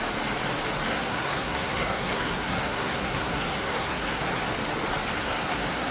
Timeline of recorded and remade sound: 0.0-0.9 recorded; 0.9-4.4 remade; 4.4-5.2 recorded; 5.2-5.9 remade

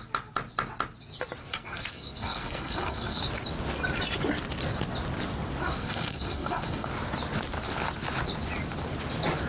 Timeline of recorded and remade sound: 0.0-1.4 recorded; 1.4-3.3 remade; 3.3-5.6 recorded; 5.6-6.9 remade; 6.9-9.5 recorded

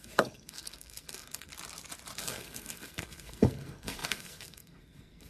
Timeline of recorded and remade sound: 0.0-1.5 remade; 1.5-2.2 recorded; 2.2-5.3 remade

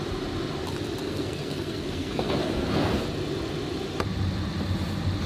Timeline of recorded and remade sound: 0.0-1.0 recorded; 1.0-3.0 remade; 3.0-5.3 recorded

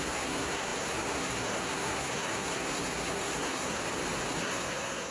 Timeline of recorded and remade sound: 0.0-3.8 remade; 3.8-4.4 recorded; 4.4-5.1 remade

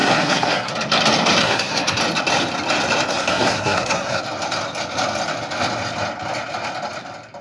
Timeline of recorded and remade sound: 0.0-0.7 remade; 0.7-1.4 recorded; 1.4-2.0 remade; 2.0-3.1 recorded; 3.1-4.2 remade; 4.2-7.4 recorded

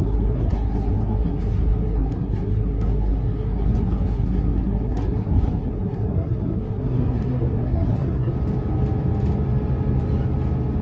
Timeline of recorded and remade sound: 0.0-8.3 remade; 8.3-10.8 recorded